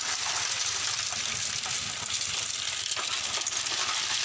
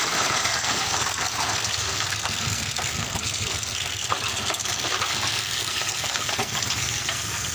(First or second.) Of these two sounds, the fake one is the second